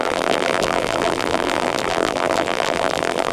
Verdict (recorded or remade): remade